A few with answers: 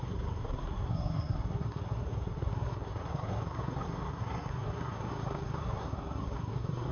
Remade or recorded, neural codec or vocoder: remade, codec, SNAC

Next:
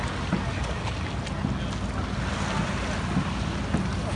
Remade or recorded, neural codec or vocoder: recorded